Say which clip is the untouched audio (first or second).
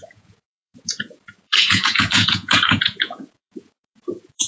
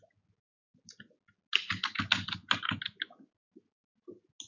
second